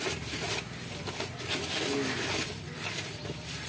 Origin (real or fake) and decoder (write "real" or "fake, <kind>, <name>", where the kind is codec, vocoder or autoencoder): real